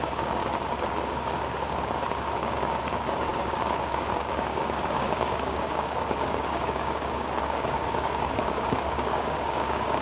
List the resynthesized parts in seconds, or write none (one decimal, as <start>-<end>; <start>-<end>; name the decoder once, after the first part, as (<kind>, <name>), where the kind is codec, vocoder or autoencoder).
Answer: 0.0-0.4 (codec, DAC); 0.9-10.0